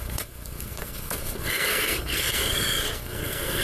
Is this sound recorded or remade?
remade